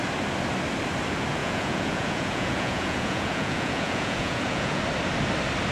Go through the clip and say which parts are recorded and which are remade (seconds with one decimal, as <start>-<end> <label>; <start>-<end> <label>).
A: 0.0-1.4 recorded; 1.4-4.8 remade; 4.8-5.7 recorded